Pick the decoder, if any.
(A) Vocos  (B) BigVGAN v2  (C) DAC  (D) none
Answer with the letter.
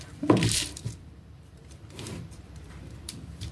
B